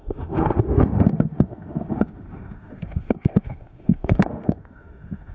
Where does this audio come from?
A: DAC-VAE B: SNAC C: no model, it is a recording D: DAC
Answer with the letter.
A